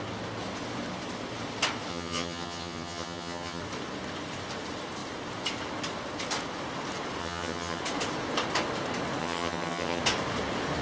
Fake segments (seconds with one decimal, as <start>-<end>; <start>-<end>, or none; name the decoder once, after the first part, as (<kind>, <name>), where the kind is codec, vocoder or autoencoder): 1.9-3.6 (vocoder, HiFi-GAN); 7.2-7.8; 9.2-10.0